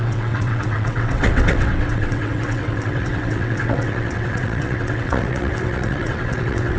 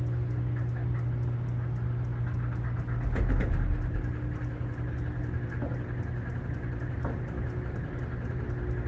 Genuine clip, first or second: second